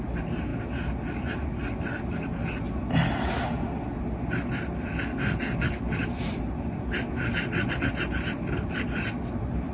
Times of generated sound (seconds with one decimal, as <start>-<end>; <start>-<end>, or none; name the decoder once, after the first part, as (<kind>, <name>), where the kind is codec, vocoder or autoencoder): none